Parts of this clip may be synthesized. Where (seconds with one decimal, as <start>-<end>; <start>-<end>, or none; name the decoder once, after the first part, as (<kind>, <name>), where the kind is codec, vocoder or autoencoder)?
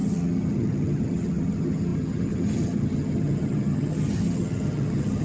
0.0-5.2 (vocoder, HiFi-GAN)